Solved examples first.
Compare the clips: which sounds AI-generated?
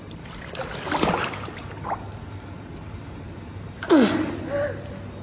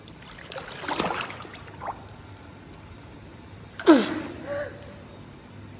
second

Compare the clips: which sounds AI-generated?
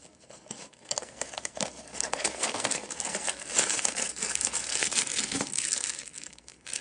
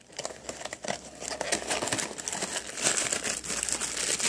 first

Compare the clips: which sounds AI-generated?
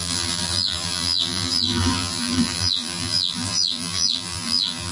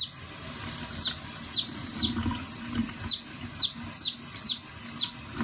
first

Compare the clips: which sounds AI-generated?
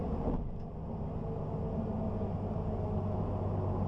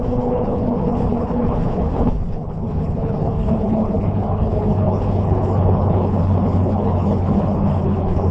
second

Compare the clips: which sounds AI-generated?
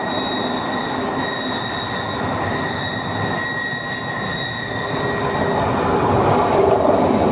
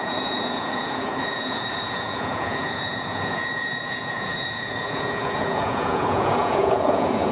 second